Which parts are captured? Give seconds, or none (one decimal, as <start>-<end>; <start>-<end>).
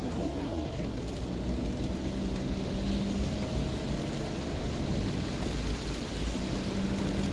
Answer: 1.0-7.3